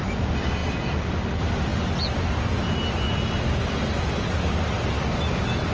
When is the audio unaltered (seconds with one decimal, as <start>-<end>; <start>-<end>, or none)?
0.0-5.7